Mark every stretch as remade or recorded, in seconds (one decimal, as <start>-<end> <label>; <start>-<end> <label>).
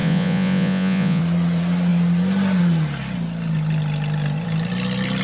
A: 0.0-1.2 remade; 1.2-5.2 recorded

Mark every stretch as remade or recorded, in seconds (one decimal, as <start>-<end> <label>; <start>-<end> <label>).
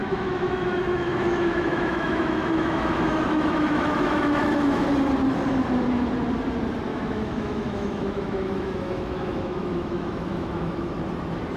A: 0.0-4.9 remade; 4.9-6.9 recorded; 6.9-10.9 remade; 10.9-11.6 recorded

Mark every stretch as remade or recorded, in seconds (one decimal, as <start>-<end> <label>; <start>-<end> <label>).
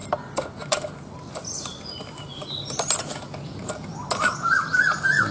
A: 0.0-3.1 recorded; 3.1-3.9 remade; 3.9-5.3 recorded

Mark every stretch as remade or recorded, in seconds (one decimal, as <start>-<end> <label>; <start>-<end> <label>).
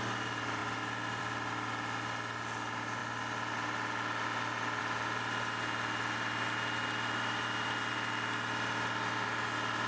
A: 0.0-9.9 recorded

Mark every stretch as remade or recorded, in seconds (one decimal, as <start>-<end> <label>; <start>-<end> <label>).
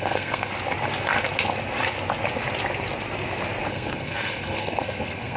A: 0.0-0.5 remade; 0.5-3.7 recorded; 3.7-5.4 remade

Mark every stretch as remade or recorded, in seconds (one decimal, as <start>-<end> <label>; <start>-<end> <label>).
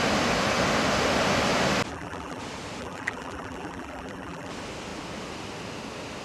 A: 0.0-1.9 recorded; 1.9-2.4 remade; 2.4-2.8 recorded; 2.8-4.5 remade; 4.5-6.2 recorded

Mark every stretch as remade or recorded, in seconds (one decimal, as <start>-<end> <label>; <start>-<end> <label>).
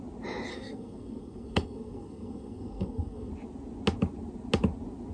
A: 0.0-0.5 recorded; 0.5-3.3 remade; 3.3-5.1 recorded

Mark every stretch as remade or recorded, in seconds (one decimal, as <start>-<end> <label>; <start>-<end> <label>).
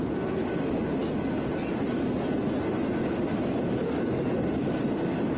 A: 0.0-5.4 recorded